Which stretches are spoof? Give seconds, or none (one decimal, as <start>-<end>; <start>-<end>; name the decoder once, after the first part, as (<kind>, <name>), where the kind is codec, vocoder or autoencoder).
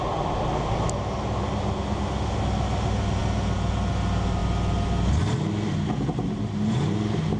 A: none